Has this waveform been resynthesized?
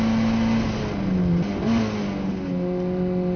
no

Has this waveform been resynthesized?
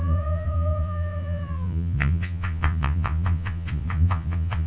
yes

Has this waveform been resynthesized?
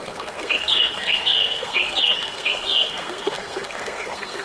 yes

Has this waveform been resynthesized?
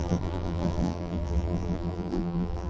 yes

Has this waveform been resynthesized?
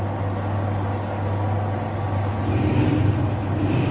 no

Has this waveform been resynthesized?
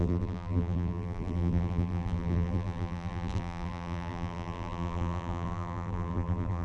yes